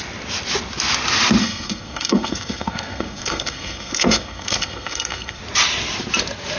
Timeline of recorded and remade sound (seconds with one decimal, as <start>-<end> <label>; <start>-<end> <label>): 0.0-1.4 recorded; 1.4-5.4 remade; 5.4-6.6 recorded